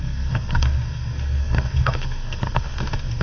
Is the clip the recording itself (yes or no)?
no